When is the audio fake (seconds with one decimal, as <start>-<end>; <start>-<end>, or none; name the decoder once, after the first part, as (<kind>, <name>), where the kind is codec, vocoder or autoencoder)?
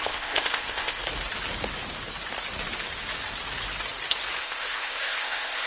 0.0-1.0 (codec, ZipCodec); 4.4-5.7